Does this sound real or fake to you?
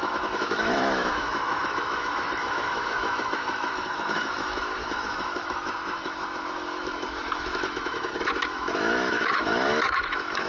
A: fake